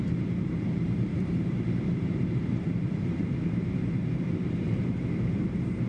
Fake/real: fake